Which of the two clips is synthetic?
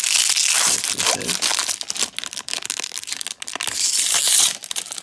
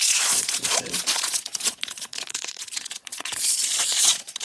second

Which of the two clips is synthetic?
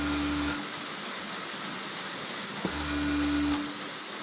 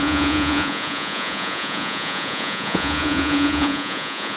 second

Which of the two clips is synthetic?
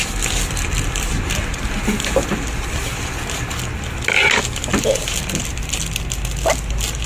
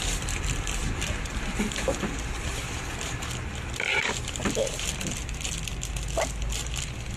second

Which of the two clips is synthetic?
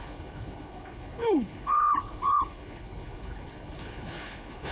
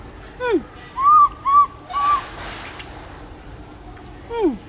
first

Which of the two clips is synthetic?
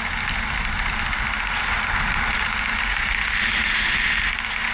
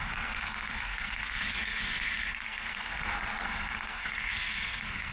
second